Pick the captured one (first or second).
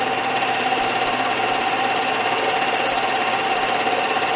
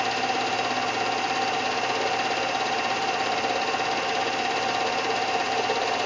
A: second